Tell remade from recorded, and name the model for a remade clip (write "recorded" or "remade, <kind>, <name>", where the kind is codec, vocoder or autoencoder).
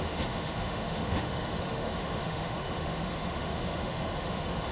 remade, autoencoder, DAC-VAE